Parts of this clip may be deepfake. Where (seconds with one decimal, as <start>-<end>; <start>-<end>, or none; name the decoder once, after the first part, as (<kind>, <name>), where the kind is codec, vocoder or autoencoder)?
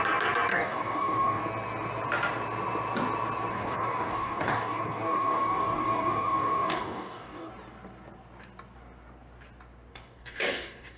0.5-1.4 (codec, DAC); 3.5-7.5; 9.9-11.0